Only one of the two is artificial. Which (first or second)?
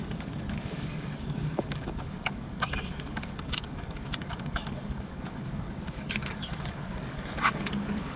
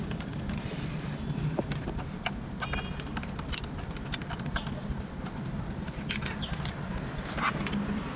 first